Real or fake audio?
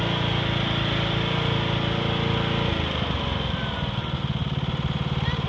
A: real